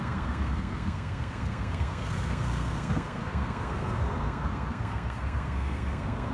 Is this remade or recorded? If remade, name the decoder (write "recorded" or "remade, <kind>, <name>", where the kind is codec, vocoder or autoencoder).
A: remade, codec, SNAC